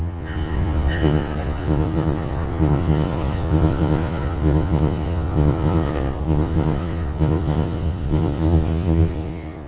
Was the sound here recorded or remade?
remade